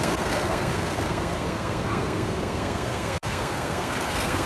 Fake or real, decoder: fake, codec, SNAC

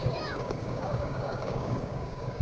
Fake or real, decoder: fake, codec, DAC